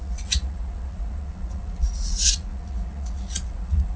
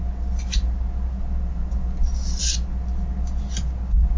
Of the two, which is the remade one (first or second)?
first